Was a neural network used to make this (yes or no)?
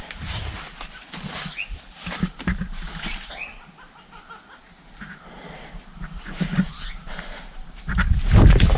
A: yes